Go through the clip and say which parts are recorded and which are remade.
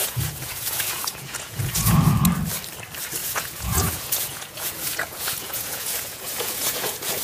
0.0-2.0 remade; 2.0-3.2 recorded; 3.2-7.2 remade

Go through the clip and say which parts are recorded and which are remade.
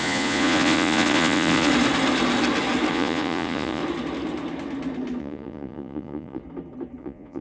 0.0-1.7 remade; 1.7-2.9 recorded; 2.9-3.8 remade; 3.8-5.2 recorded; 5.2-6.4 remade; 6.4-7.0 recorded; 7.0-7.4 remade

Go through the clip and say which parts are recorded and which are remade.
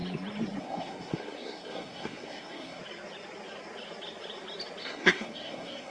0.0-0.6 recorded; 0.6-2.8 remade; 2.8-4.8 recorded; 4.8-5.9 remade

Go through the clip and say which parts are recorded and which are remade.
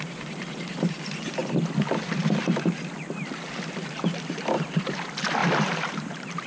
0.0-5.4 recorded; 5.4-6.5 remade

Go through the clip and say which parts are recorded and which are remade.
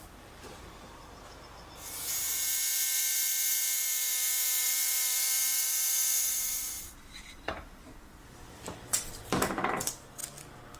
0.0-10.2 remade; 10.2-10.8 recorded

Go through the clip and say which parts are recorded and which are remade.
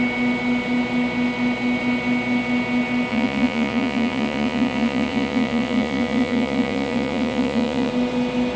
0.0-3.1 recorded; 3.1-7.9 remade; 7.9-8.6 recorded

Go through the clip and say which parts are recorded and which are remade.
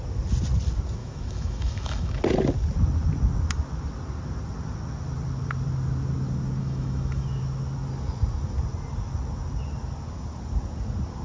0.0-1.0 recorded; 1.0-2.2 remade; 2.2-6.6 recorded; 6.6-7.4 remade; 7.4-11.2 recorded